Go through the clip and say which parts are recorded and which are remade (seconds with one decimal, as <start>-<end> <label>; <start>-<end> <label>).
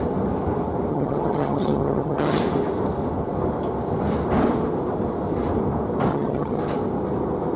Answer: 0.0-0.9 recorded; 0.9-2.4 remade; 2.4-6.1 recorded; 6.1-6.6 remade; 6.6-7.6 recorded